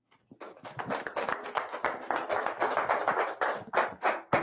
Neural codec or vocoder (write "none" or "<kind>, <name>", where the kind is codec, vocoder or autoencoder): none